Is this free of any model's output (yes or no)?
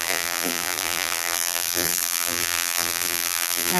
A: no